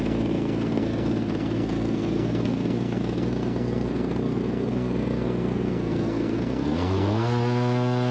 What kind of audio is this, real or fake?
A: fake